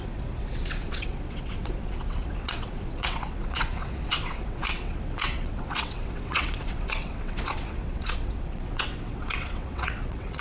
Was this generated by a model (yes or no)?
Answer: yes